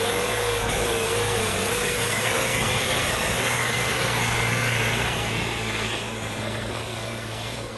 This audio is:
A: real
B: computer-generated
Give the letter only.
B